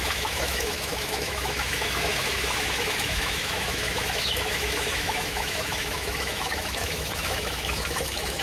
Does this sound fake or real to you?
fake